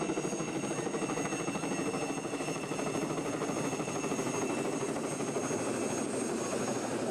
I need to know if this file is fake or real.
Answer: real